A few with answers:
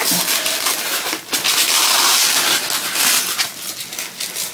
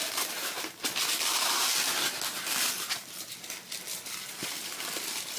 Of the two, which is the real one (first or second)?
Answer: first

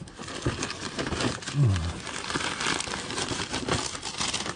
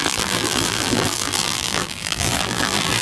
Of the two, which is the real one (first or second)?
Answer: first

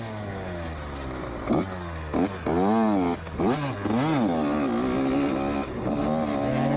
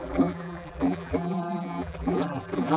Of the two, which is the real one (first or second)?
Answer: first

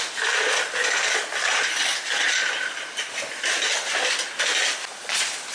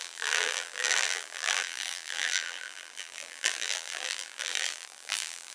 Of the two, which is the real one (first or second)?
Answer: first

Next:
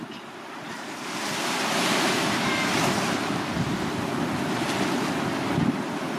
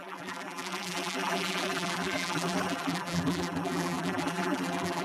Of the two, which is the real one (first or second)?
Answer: first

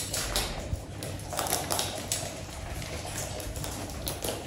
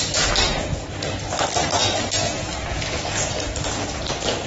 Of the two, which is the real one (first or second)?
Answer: second